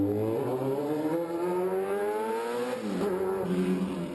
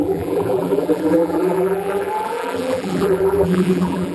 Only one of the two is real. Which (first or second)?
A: first